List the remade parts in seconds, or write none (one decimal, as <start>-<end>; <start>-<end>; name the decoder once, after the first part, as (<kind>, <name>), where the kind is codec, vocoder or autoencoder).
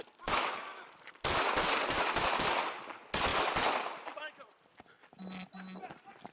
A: none